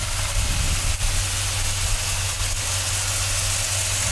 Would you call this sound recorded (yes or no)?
yes